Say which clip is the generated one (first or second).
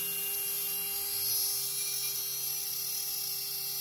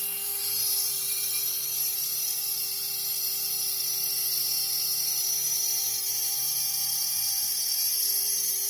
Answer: second